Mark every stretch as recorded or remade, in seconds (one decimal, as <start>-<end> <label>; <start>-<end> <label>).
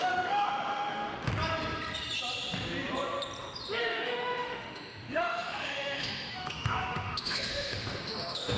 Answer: 0.0-1.3 remade; 1.3-3.8 recorded; 3.8-8.6 remade